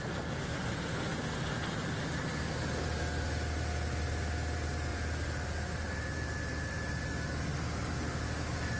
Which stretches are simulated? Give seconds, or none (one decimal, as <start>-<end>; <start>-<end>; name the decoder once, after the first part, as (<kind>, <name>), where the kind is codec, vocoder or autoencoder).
4.9-7.0 (vocoder, BigVGAN v2)